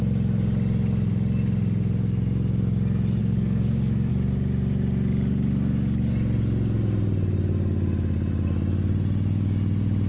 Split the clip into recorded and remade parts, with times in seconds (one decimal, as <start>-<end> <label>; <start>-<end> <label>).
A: 0.0-3.2 recorded; 3.2-4.1 remade; 4.1-10.1 recorded